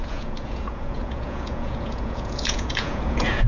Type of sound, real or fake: fake